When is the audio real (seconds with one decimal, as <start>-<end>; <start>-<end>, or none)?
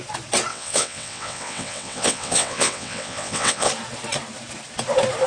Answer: 0.0-0.5; 3.7-5.3